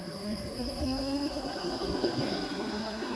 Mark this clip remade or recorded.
remade